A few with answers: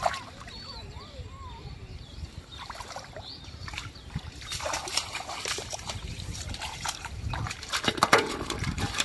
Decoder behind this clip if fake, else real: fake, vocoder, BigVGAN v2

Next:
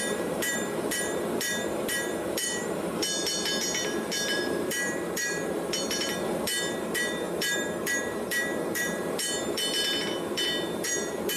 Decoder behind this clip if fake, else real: fake, vocoder, BigVGAN v2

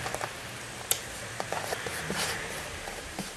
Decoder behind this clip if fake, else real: fake, vocoder, BigVGAN v2